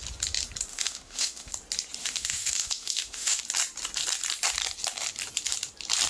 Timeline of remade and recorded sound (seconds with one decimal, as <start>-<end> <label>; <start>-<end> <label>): 0.0-0.7 recorded; 0.7-1.5 remade; 1.5-2.0 recorded; 2.0-3.4 remade; 3.4-6.1 recorded